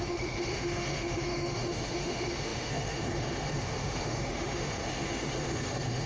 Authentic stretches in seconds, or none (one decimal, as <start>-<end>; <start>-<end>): none

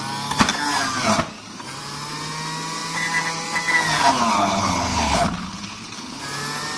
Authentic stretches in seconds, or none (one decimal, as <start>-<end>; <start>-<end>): 0.0-4.4; 6.2-6.8

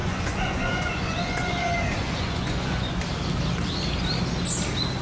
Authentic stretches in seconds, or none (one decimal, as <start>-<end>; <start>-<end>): 3.0-5.0

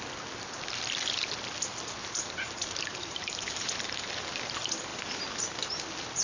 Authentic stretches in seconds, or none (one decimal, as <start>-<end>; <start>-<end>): 0.0-2.0; 4.1-4.9; 5.8-6.2